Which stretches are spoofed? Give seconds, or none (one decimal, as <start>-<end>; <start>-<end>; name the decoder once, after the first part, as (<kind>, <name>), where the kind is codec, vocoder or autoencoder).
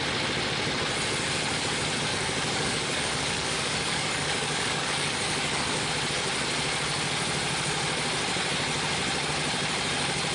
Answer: 2.1-5.9 (codec, DAC)